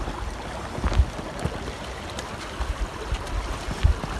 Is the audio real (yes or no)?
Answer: yes